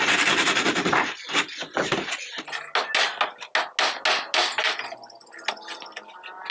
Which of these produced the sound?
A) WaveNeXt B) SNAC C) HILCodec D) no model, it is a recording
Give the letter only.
D